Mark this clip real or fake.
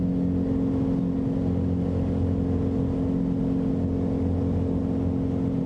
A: real